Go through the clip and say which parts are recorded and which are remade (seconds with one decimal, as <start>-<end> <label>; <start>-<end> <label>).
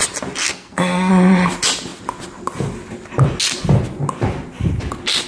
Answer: 0.0-0.4 recorded; 0.4-1.1 remade; 1.1-5.3 recorded